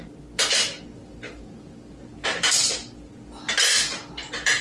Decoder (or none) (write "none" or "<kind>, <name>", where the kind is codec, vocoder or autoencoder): none